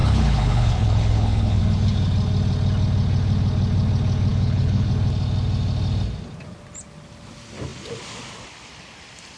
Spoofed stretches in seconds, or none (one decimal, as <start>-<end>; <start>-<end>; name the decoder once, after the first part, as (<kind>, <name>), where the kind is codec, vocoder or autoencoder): 0.0-1.6 (codec, HILCodec); 4.3-4.9

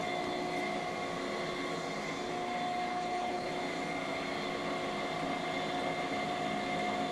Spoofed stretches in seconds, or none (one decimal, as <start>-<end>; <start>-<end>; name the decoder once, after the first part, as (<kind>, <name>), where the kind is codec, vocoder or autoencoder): 2.9-3.5 (codec, HILCodec)

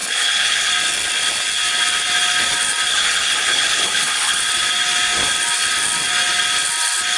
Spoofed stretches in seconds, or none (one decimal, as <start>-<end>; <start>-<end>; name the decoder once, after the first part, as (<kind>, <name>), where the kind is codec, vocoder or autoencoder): 0.0-0.7 (codec, HILCodec); 2.9-4.4